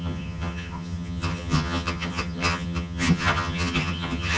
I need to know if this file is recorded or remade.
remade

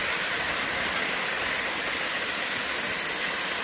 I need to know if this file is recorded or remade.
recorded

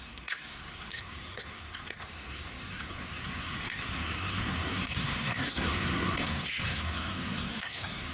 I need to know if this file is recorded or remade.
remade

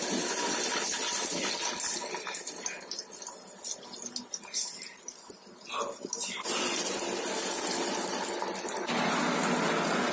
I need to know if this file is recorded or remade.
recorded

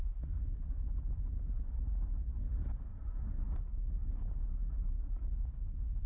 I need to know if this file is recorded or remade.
recorded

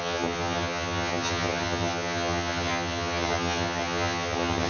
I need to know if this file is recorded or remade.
remade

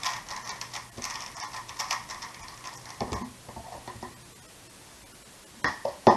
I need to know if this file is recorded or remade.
recorded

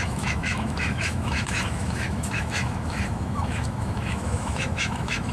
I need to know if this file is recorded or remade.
remade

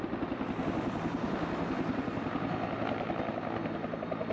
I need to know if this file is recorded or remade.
recorded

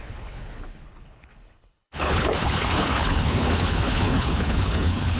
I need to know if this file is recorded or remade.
remade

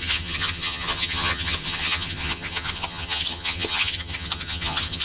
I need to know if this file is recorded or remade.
remade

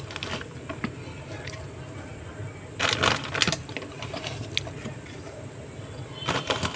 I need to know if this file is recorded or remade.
recorded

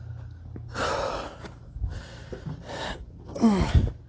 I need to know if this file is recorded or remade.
recorded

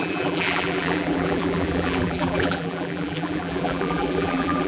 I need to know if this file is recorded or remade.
remade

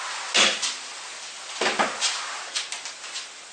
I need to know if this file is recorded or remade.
recorded